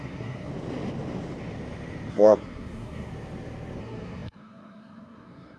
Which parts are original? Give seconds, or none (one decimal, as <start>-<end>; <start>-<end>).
0.5-2.1; 3.1-3.8